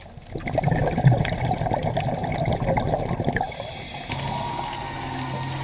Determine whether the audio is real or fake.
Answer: real